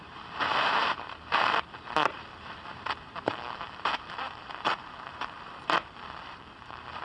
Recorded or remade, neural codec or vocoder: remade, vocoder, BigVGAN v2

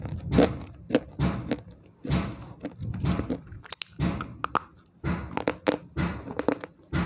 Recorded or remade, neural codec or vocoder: recorded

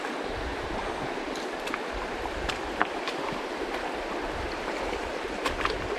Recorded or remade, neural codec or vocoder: remade, vocoder, BigVGAN v2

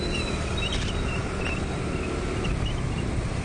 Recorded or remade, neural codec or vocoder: recorded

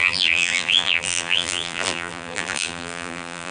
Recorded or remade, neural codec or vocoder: remade, vocoder, BigVGAN v2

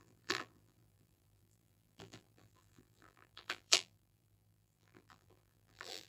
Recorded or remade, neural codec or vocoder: remade, vocoder, BigVGAN v2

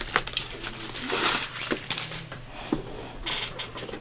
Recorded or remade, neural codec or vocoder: remade, vocoder, BigVGAN v2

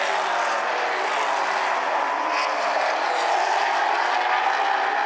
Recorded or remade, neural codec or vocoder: recorded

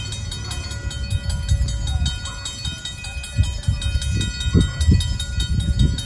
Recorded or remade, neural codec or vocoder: recorded